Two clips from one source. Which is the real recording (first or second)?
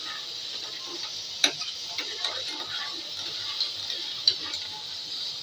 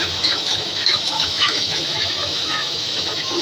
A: first